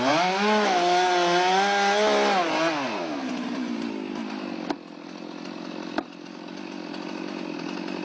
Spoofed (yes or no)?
no